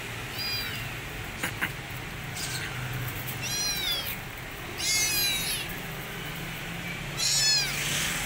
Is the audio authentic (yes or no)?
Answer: yes